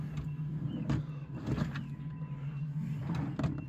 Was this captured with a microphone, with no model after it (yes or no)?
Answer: yes